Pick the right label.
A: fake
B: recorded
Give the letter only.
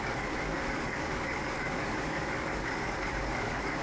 A